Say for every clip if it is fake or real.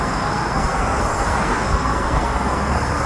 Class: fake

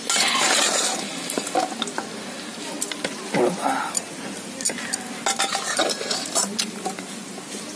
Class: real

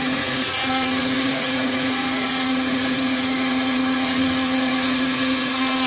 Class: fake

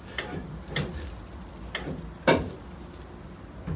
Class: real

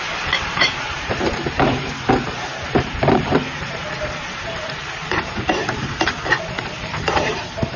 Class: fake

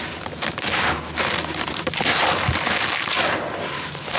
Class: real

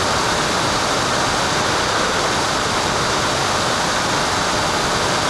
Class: real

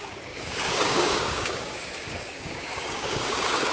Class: fake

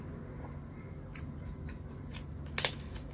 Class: real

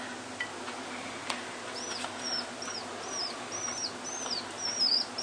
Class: real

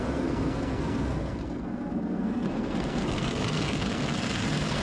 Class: fake